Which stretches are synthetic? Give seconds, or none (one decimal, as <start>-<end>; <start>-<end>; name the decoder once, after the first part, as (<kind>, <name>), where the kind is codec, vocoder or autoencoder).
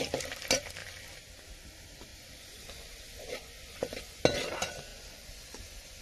2.1-4.2 (vocoder, Vocos); 4.9-6.0